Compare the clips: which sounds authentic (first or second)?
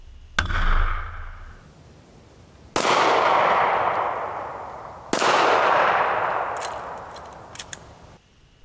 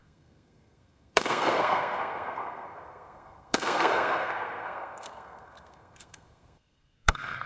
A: first